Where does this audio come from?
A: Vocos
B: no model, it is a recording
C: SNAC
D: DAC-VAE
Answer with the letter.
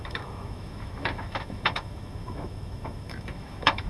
D